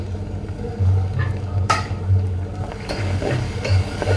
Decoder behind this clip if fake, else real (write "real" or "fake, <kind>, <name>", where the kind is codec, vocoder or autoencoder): fake, codec, DAC